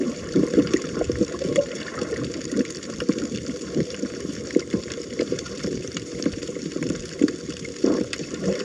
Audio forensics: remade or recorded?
remade